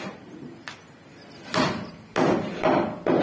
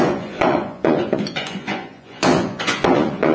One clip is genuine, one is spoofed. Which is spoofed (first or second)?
second